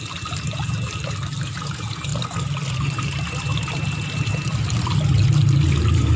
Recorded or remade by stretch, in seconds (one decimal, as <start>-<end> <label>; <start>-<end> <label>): 0.0-2.1 remade; 2.1-2.7 recorded; 2.7-6.2 remade